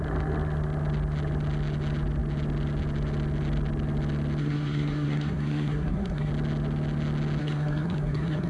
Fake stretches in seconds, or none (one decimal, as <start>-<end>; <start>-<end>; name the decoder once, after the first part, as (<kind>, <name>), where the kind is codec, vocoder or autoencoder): 4.4-6.3 (codec, SNAC); 7.4-8.5